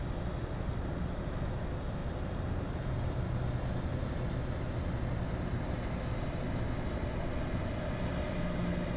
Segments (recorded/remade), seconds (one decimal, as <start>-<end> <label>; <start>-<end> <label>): 0.0-9.0 recorded